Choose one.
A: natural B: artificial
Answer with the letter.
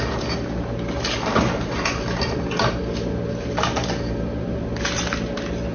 A